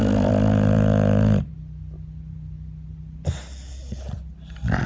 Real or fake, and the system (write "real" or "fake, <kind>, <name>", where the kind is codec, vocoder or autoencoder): real